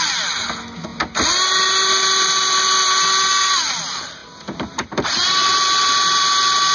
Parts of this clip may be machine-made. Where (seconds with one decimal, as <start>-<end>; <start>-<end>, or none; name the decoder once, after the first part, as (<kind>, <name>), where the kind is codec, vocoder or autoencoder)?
4.2-4.7 (vocoder, BigVGAN v2); 5.4-6.3